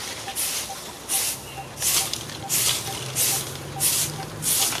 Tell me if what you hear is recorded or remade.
recorded